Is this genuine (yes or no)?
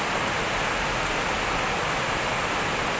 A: yes